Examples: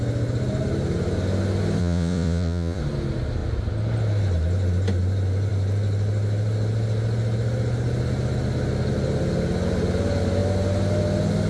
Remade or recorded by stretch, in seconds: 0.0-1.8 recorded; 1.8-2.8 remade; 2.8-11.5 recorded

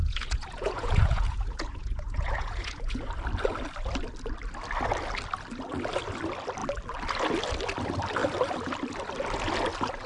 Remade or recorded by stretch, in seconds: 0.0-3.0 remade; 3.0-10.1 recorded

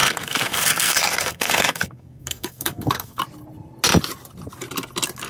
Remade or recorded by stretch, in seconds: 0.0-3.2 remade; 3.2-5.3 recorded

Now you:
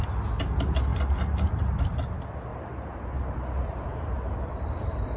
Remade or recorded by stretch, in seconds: 0.0-0.9 recorded; 0.9-1.5 remade; 1.5-5.2 recorded

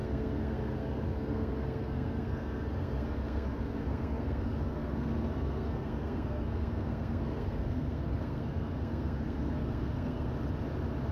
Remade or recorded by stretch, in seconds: 0.0-10.3 remade; 10.3-11.1 recorded

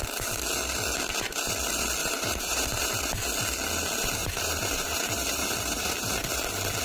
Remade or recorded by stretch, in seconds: 0.0-2.0 recorded; 2.0-2.9 remade; 2.9-4.2 recorded; 4.2-6.3 remade; 6.3-6.8 recorded

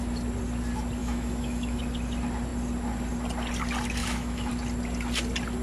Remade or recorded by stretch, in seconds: 0.0-1.0 recorded; 1.0-1.8 remade; 1.8-4.0 recorded; 4.0-4.5 remade; 4.5-5.6 recorded